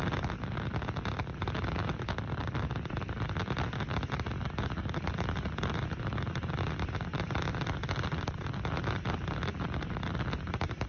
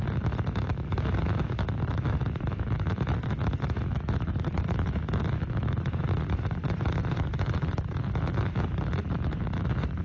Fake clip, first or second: second